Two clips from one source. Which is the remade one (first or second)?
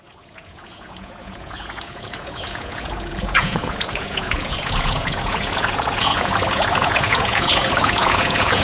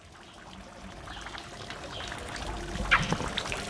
first